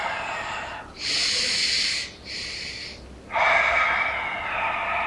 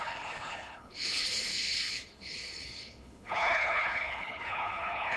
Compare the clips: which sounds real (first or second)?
first